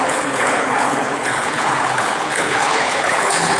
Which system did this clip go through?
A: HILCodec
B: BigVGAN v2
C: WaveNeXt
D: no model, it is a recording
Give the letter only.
A